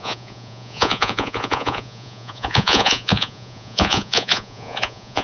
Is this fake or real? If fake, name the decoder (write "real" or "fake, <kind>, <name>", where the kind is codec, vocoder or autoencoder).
fake, vocoder, Vocos